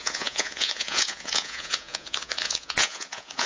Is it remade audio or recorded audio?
remade